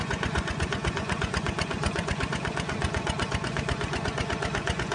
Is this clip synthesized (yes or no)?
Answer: yes